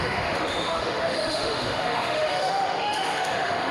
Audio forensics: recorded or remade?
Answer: remade